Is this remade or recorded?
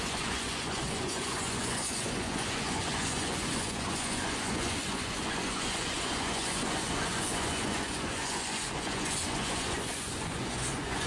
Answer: remade